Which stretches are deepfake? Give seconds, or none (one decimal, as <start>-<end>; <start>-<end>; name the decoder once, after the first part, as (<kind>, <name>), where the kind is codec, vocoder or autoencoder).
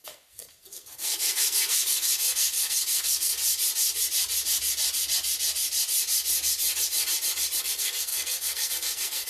0.0-3.4 (codec, SNAC); 7.6-9.3